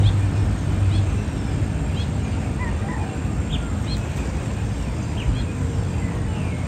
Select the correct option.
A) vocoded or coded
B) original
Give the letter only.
B